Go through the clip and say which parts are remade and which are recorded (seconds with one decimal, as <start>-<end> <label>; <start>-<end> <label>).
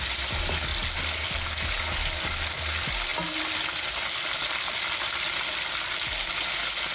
0.0-6.9 recorded